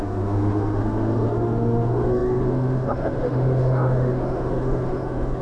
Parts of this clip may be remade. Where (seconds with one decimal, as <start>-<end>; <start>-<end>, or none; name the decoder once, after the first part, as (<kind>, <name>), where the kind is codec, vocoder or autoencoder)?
0.0-5.4 (autoencoder, DAC-VAE)